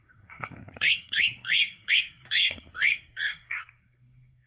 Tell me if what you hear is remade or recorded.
remade